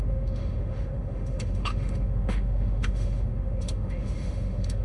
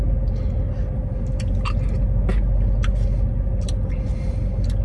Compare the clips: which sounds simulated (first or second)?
first